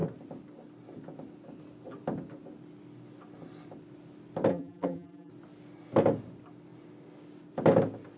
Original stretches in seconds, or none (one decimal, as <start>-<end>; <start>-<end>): 0.0-4.5; 5.3-8.2